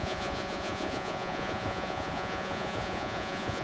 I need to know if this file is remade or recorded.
remade